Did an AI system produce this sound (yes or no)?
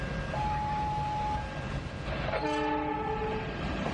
no